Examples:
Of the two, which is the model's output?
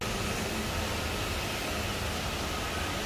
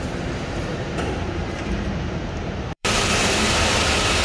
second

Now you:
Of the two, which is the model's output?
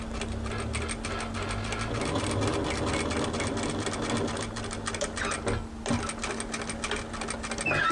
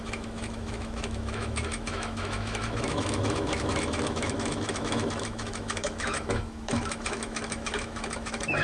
second